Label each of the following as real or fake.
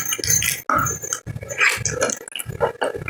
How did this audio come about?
real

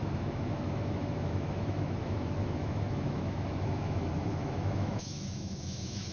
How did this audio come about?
fake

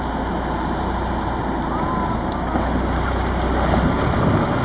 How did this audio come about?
real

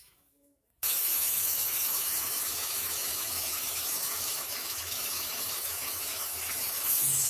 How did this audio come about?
fake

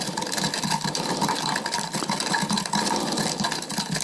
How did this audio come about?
real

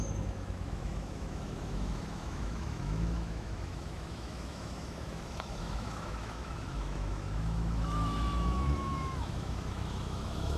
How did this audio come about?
fake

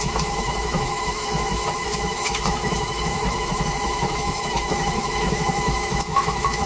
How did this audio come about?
fake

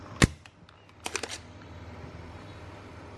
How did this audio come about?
real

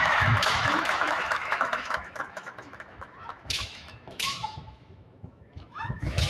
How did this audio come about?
fake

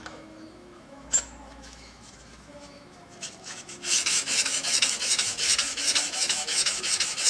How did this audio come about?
fake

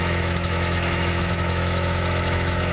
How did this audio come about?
fake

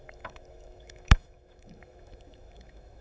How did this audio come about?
fake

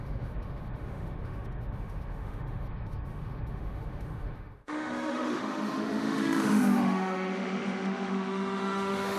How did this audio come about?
fake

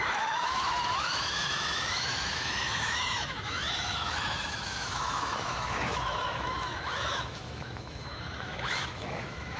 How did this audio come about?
fake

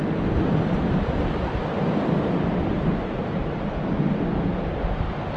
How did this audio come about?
real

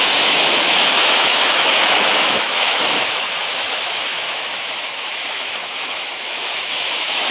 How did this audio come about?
fake